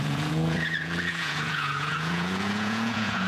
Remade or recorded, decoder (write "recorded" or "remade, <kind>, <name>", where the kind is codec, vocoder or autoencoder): remade, vocoder, Vocos